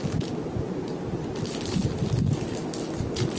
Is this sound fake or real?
real